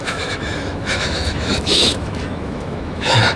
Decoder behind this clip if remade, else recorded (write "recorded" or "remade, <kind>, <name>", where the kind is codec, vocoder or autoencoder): remade, autoencoder, DAC-VAE